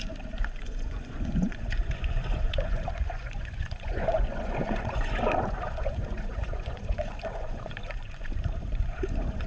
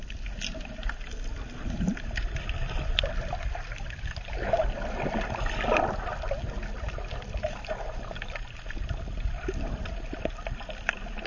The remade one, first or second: first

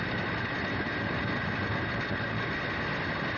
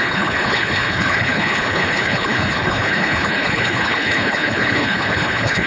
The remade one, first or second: second